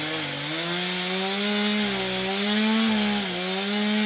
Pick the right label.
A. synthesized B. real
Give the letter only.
B